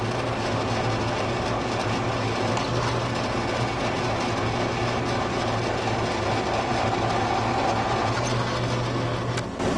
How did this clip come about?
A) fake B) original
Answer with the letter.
B